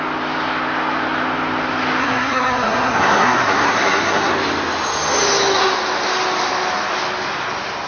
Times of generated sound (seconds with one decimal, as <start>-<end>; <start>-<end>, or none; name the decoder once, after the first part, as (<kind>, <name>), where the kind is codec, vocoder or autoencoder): 2.0-4.3 (codec, SNAC)